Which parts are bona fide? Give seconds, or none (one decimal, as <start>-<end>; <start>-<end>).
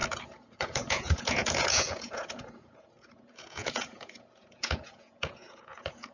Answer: none